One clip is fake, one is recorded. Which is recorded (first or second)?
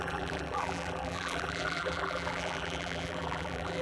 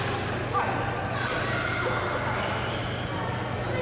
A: second